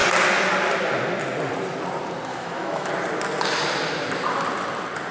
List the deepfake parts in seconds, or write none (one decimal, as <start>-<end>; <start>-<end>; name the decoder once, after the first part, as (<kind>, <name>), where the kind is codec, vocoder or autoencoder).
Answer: 2.3-2.9 (autoencoder, DAC-VAE)